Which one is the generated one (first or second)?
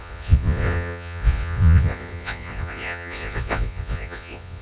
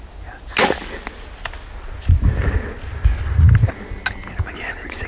first